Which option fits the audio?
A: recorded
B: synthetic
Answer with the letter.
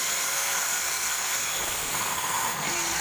B